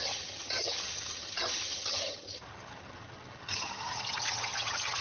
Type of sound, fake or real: fake